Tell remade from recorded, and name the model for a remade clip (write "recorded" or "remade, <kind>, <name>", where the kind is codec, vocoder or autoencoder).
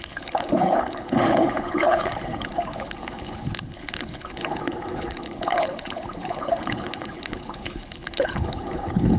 remade, codec, HILCodec